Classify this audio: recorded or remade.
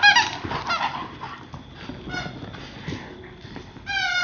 recorded